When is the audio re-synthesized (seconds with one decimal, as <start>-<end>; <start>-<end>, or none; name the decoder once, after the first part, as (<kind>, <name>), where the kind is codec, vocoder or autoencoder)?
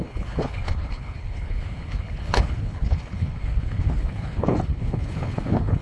0.0-5.8 (codec, HILCodec)